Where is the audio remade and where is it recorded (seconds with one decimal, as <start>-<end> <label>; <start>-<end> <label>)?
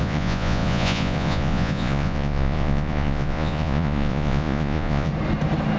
0.0-5.1 remade; 5.1-5.8 recorded